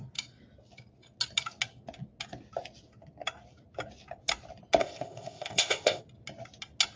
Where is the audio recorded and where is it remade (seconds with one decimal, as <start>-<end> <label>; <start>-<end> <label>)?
0.0-4.8 recorded; 4.8-6.0 remade; 6.0-7.0 recorded